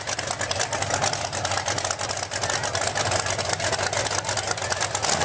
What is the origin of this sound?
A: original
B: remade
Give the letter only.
A